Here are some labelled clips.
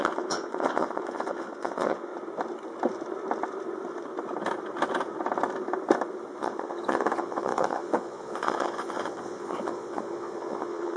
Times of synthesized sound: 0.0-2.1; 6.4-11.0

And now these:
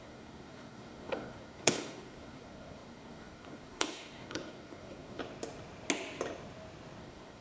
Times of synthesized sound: 0.0-5.2; 7.0-7.4

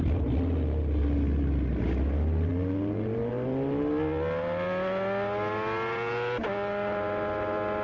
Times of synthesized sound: none

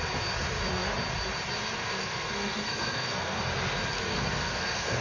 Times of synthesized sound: 1.8-3.4; 4.1-5.0

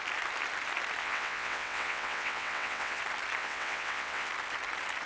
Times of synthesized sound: 1.0-3.0; 3.4-4.3

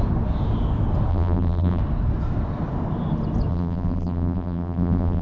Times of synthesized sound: 1.1-1.8; 3.5-5.2

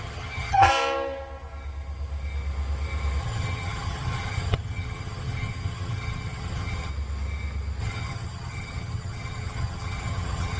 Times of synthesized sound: 0.0-0.7; 3.2-6.9; 7.8-10.6